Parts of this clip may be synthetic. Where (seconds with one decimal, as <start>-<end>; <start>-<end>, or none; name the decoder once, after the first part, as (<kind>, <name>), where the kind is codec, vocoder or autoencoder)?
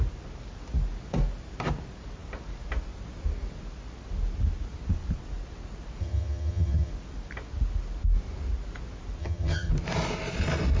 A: 6.0-6.9 (vocoder, HiFi-GAN); 9.2-9.7